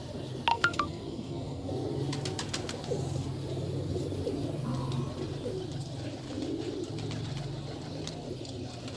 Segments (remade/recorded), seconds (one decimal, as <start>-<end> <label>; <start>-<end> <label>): 0.0-0.5 recorded; 0.5-1.7 remade; 1.7-9.0 recorded